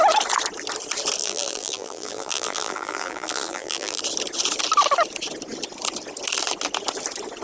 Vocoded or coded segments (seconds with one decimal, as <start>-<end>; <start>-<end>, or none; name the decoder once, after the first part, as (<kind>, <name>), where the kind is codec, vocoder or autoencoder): 1.2-4.0 (vocoder, BigVGAN v2)